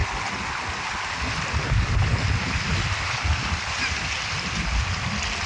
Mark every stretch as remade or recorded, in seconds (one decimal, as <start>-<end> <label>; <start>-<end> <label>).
0.0-5.5 recorded